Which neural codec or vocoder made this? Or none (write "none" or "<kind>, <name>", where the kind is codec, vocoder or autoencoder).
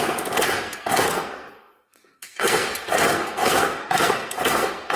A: codec, SNAC